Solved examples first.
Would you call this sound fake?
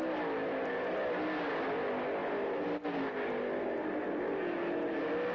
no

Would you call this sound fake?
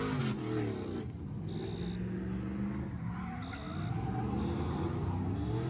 no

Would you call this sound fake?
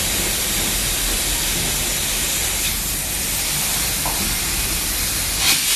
no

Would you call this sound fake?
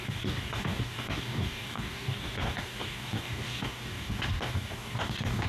yes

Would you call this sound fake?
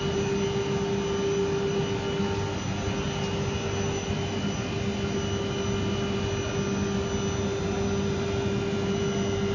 no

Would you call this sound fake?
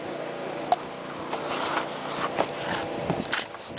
no